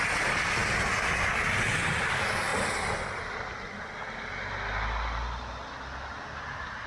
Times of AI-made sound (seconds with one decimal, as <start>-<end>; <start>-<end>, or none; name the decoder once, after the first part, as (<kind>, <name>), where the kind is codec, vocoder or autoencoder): none